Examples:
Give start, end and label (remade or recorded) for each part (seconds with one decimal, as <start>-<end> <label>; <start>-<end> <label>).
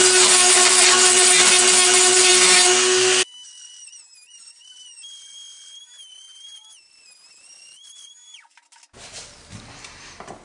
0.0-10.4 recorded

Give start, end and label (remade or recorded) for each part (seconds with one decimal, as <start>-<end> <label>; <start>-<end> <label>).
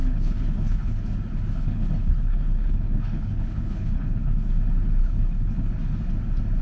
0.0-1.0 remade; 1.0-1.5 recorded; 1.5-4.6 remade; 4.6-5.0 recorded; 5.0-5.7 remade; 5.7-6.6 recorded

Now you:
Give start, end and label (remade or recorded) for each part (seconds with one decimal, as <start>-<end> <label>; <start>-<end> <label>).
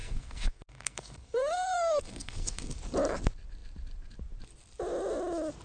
0.0-2.7 remade; 2.7-5.6 recorded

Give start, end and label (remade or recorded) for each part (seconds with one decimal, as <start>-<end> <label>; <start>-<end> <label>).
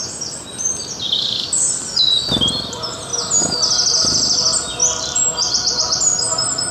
0.0-3.1 remade; 3.1-4.0 recorded; 4.0-6.7 remade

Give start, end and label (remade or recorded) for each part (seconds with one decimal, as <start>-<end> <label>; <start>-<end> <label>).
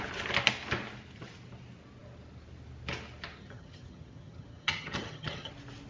0.0-3.4 recorded; 3.4-5.5 remade; 5.5-5.9 recorded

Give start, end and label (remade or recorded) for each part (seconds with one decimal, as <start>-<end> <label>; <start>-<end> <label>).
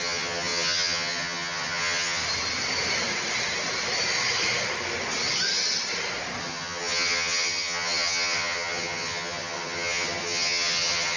0.0-2.2 remade; 2.2-6.4 recorded; 6.4-11.2 remade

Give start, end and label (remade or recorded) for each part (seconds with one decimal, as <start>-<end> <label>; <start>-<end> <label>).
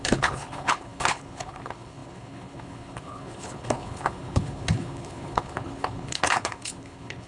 0.0-7.3 remade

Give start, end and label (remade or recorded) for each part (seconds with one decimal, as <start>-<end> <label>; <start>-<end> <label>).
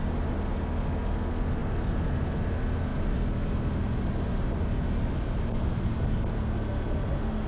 0.0-7.5 recorded